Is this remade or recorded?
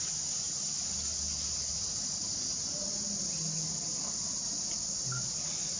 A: recorded